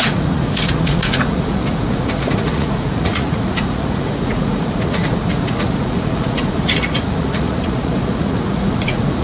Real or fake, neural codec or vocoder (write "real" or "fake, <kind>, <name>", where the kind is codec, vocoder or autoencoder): fake, vocoder, Vocos